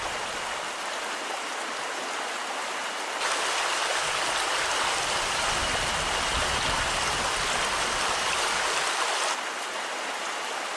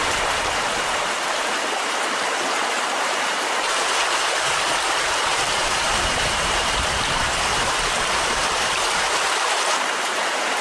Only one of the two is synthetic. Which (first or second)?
second